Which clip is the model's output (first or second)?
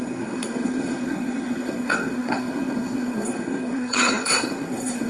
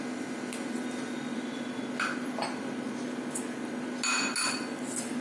first